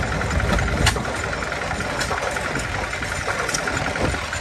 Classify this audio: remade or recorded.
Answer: recorded